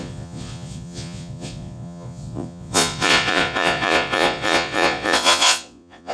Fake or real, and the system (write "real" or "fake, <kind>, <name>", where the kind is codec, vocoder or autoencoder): fake, vocoder, Vocos